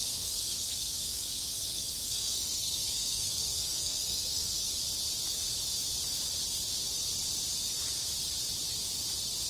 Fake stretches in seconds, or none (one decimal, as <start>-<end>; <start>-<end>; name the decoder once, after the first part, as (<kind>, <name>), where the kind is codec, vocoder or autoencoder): 0.0-4.7 (codec, SNAC)